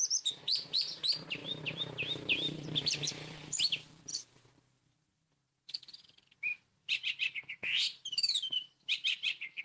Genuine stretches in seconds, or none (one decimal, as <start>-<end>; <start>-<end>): none